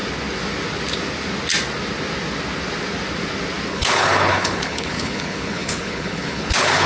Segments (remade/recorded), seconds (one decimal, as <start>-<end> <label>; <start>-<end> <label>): 0.0-3.7 recorded; 3.7-6.9 remade